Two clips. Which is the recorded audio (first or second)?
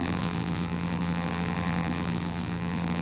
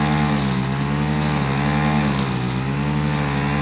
second